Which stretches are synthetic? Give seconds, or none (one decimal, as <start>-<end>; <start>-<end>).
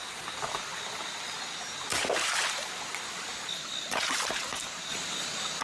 1.9-2.6; 4.9-5.6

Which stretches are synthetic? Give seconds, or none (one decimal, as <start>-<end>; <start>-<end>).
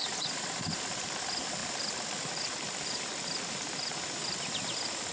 0.0-0.6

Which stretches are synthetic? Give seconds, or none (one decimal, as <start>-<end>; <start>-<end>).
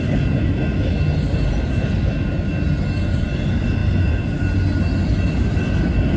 none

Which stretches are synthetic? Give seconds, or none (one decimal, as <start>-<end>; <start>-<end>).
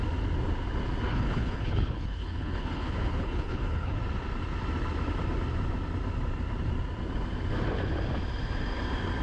1.1-4.0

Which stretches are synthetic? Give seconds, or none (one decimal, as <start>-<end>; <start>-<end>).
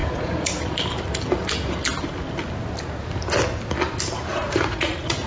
0.0-0.6; 4.3-5.3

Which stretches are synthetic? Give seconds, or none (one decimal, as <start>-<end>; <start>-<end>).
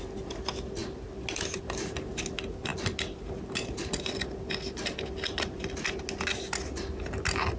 none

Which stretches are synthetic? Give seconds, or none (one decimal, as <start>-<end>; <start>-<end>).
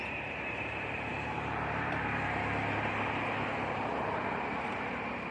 1.1-4.3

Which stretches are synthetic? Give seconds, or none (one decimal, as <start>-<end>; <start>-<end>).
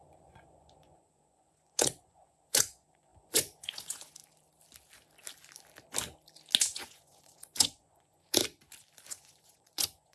0.0-4.2; 6.6-8.4; 9.1-10.1